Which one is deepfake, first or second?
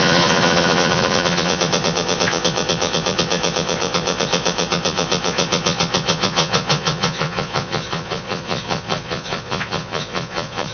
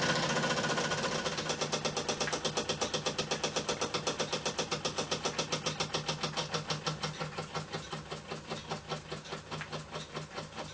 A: first